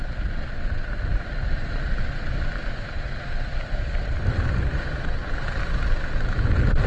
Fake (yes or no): no